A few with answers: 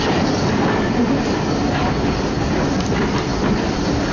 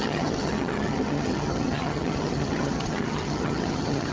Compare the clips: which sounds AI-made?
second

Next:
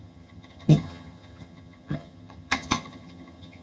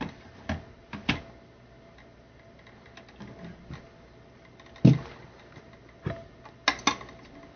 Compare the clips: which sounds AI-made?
first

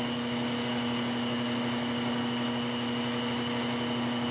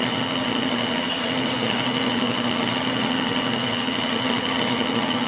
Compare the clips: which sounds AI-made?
second